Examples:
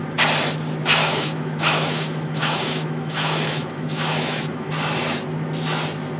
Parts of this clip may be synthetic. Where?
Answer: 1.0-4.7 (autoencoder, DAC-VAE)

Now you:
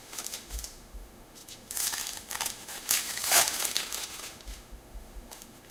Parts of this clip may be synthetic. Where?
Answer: 0.0-5.7 (autoencoder, DAC-VAE)

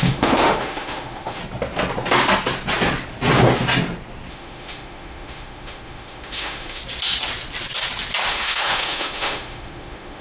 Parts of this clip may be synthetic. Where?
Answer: 0.0-1.4 (autoencoder, DAC-VAE); 4.3-6.8; 8.3-10.2

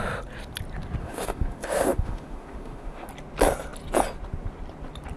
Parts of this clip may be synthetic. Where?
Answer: 1.0-3.1 (autoencoder, DAC-VAE)

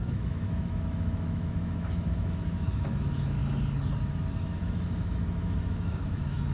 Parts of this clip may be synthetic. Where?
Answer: 0.0-3.4 (autoencoder, DAC-VAE); 4.0-6.5

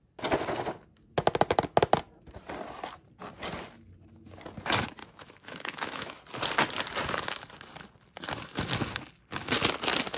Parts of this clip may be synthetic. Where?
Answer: 5.0-6.2 (autoencoder, DAC-VAE)

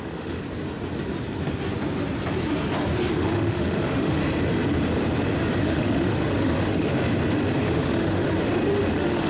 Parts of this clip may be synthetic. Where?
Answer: 0.0-0.4 (autoencoder, DAC-VAE); 3.1-4.2; 5.6-6.9; 7.6-8.2; 8.9-9.3

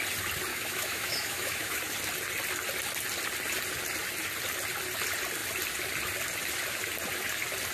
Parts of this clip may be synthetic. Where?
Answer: 0.5-1.8 (autoencoder, DAC-VAE)